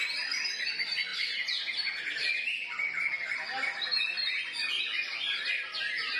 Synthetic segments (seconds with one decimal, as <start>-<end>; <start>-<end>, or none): none